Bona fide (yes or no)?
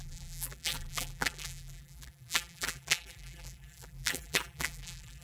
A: no